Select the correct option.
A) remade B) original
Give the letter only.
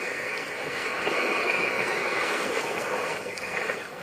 A